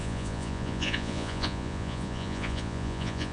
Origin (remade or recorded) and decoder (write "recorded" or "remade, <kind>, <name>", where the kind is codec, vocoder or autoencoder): remade, vocoder, Vocos